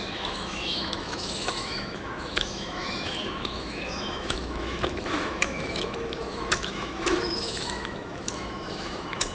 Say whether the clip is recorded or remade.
remade